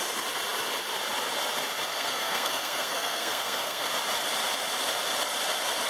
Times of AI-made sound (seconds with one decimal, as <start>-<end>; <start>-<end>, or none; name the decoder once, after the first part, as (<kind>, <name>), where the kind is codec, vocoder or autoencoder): 1.9-3.8 (codec, SNAC)